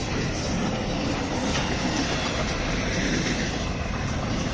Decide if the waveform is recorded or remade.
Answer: recorded